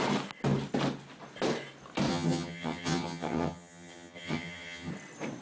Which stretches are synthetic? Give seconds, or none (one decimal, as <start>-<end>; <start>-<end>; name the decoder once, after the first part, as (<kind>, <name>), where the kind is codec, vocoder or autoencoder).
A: 2.1-4.9 (vocoder, HiFi-GAN)